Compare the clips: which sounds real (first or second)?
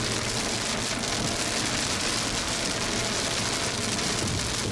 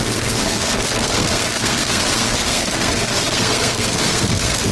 first